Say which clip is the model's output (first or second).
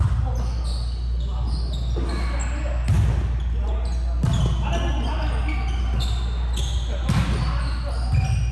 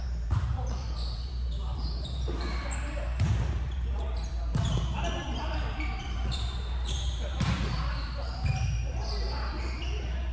second